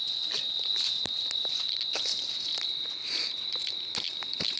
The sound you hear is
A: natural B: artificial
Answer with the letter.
A